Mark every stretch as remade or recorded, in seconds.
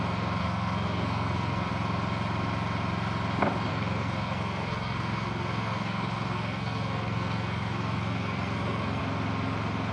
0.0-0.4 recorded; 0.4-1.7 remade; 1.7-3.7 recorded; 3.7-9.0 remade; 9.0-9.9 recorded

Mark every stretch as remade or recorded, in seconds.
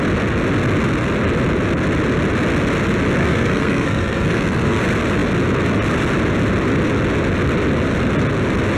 0.0-3.2 recorded; 3.2-4.8 remade; 4.8-8.8 recorded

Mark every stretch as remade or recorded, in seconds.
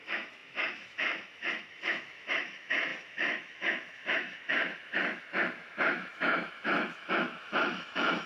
0.0-8.3 remade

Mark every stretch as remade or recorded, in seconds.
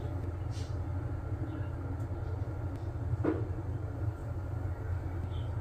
0.0-5.6 recorded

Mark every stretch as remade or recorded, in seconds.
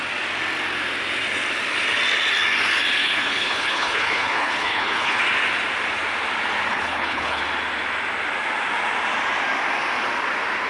0.0-3.0 recorded; 3.0-5.2 remade; 5.2-6.7 recorded; 6.7-7.4 remade; 7.4-10.7 recorded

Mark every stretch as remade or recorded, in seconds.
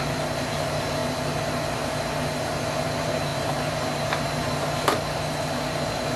0.0-1.0 remade; 1.0-2.8 recorded; 2.8-6.2 remade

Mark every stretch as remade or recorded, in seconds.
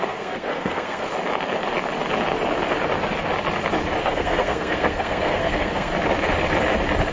0.0-1.1 remade; 1.1-4.0 recorded; 4.0-5.9 remade; 5.9-7.1 recorded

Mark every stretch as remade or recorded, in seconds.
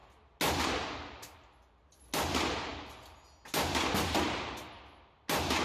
0.0-5.6 recorded